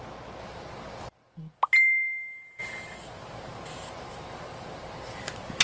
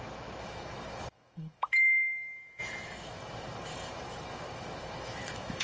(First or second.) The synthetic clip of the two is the second